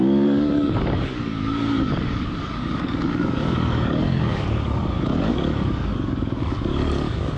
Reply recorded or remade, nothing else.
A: remade